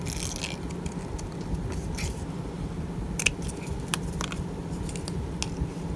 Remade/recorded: recorded